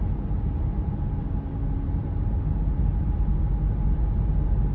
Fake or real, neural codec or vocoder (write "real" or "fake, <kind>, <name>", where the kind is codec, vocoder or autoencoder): real